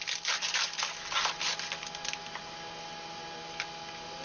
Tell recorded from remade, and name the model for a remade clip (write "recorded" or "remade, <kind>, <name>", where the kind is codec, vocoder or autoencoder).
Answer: recorded